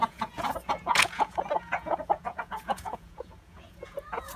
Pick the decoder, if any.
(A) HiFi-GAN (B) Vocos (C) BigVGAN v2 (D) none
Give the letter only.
B